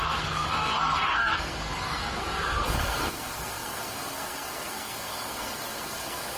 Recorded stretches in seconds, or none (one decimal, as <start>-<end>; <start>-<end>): none